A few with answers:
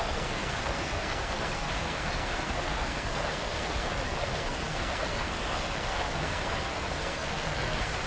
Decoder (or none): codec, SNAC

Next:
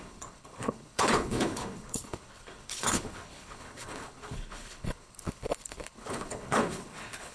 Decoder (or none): codec, HILCodec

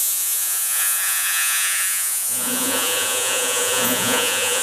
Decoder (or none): vocoder, Vocos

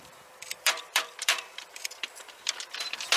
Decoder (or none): vocoder, BigVGAN v2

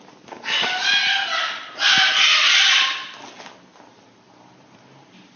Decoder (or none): none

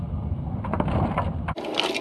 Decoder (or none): none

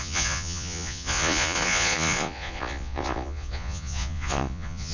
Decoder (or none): vocoder, Vocos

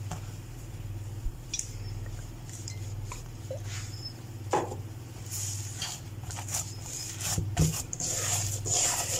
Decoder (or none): vocoder, BigVGAN v2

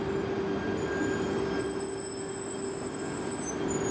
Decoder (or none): none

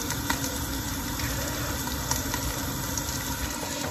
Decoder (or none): none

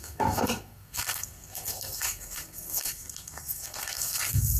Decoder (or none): codec, SNAC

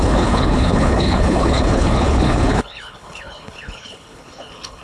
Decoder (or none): codec, HILCodec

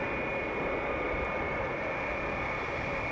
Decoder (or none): none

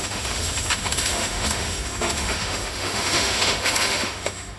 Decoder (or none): autoencoder, DAC-VAE